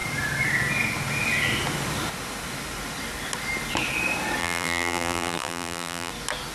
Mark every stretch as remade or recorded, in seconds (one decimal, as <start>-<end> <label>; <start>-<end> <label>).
0.0-4.4 recorded; 4.4-6.1 remade; 6.1-6.5 recorded